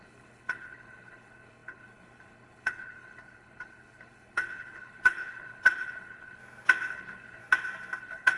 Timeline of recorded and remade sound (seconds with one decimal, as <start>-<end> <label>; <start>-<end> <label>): 0.0-6.4 remade; 6.4-6.9 recorded; 6.9-7.4 remade; 7.4-8.0 recorded; 8.0-8.4 remade